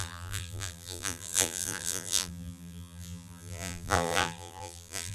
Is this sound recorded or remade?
remade